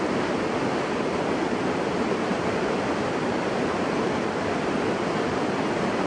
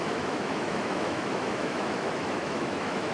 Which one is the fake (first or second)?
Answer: second